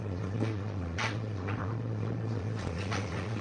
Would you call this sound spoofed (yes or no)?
yes